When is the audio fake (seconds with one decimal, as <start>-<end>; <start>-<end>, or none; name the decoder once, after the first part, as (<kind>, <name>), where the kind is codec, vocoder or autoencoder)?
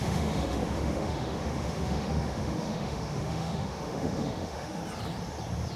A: 0.0-4.8 (autoencoder, DAC-VAE)